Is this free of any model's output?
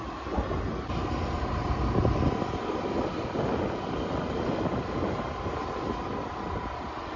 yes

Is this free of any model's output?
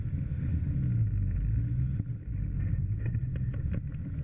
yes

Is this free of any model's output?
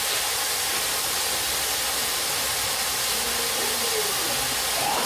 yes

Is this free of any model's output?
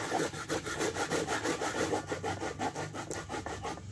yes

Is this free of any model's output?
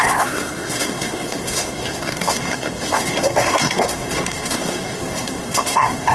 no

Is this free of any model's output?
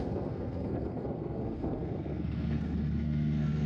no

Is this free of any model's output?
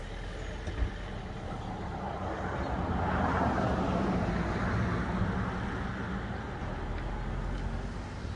yes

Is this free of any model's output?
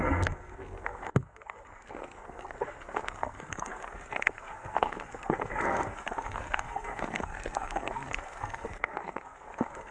no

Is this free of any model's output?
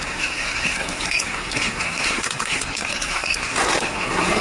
no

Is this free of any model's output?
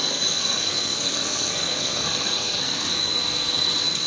no